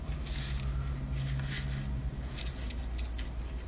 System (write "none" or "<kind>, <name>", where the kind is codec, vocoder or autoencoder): none